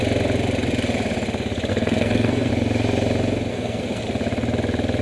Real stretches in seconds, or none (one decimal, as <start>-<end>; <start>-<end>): 0.0-1.7; 2.5-3.5; 4.0-5.0